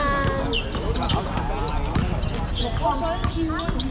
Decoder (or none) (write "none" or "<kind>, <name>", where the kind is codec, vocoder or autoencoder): none